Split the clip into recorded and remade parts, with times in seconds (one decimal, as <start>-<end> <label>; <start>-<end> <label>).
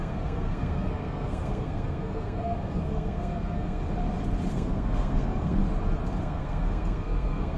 0.0-3.8 remade; 3.8-4.5 recorded; 4.5-5.6 remade; 5.6-6.2 recorded; 6.2-7.6 remade